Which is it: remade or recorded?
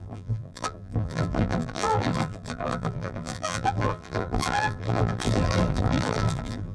remade